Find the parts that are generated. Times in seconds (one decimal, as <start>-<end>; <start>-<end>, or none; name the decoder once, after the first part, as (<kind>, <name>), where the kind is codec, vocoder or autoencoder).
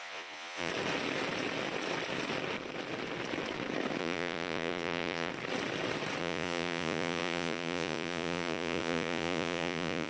0.0-0.7 (vocoder, Vocos); 4.0-5.3; 6.2-10.1